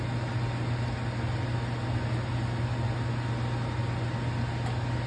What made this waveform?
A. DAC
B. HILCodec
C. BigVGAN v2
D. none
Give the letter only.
D